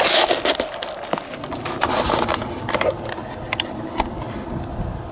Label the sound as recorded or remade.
recorded